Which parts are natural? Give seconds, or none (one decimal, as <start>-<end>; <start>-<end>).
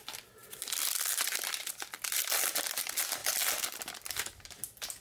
0.0-5.0